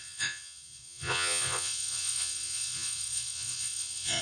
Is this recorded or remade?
remade